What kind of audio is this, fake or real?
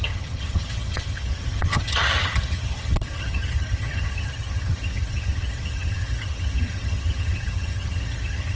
fake